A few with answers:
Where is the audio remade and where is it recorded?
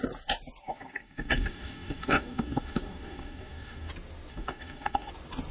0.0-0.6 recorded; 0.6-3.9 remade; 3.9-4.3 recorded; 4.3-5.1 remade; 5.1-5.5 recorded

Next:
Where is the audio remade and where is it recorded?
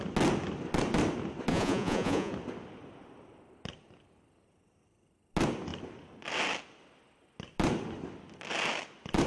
0.0-1.5 recorded; 1.5-2.3 remade; 2.3-9.3 recorded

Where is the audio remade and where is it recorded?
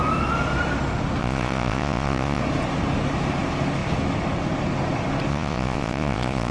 0.0-1.2 recorded; 1.2-2.4 remade; 2.4-5.3 recorded; 5.3-6.5 remade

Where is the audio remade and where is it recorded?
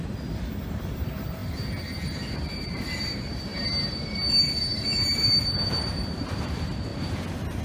0.0-7.6 remade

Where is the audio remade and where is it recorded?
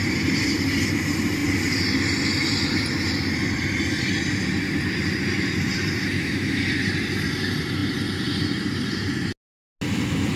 0.0-6.0 recorded; 6.0-6.6 remade; 6.6-10.4 recorded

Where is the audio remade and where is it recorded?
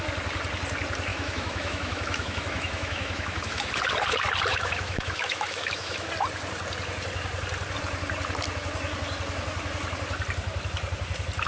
0.0-1.1 recorded; 1.1-3.7 remade; 3.7-4.5 recorded; 4.5-6.1 remade; 6.1-11.5 recorded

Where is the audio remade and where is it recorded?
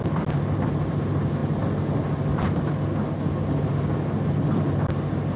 0.0-5.4 recorded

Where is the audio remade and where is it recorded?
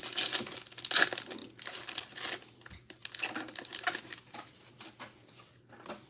0.0-4.1 recorded; 4.1-4.7 remade; 4.7-6.1 recorded